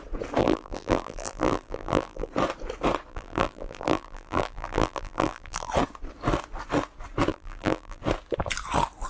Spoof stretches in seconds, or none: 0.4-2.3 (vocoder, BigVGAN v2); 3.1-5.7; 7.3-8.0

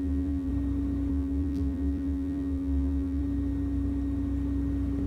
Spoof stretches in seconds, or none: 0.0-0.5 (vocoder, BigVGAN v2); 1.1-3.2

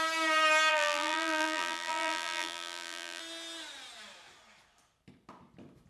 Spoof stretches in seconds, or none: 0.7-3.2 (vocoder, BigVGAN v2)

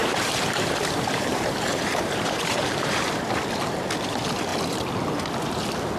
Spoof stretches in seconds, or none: 0.0-3.4 (vocoder, BigVGAN v2)